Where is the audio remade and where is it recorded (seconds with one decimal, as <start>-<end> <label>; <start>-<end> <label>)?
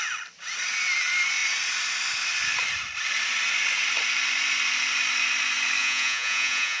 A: 0.0-5.8 recorded; 5.8-6.8 remade